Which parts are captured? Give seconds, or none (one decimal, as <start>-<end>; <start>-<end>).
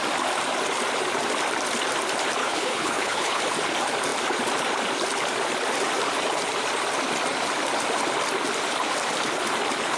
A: 0.0-2.4; 3.4-10.0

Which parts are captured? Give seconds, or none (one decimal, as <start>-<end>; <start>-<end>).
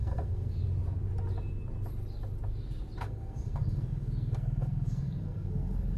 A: 0.6-3.0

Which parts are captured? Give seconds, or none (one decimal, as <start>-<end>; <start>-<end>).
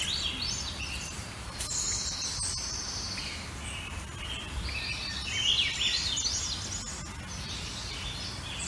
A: 0.0-1.2; 1.7-8.7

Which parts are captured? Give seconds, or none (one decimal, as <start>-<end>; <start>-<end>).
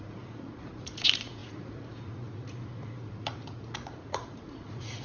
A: none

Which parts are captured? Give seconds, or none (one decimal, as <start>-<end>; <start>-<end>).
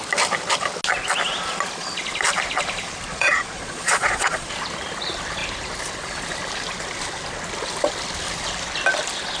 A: 0.0-3.1; 4.5-9.4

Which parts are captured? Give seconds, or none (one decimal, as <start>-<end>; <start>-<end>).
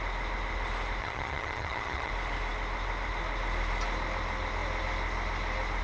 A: 0.0-1.0; 2.1-5.8